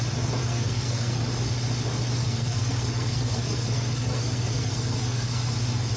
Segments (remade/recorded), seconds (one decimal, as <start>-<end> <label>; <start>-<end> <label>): 0.0-0.4 recorded; 0.4-1.2 remade; 1.2-2.2 recorded; 2.2-5.5 remade; 5.5-6.0 recorded